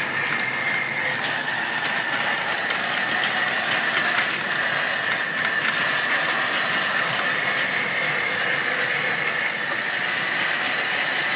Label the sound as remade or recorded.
recorded